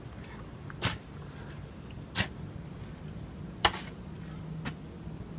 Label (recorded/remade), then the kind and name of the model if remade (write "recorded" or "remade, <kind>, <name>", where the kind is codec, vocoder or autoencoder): recorded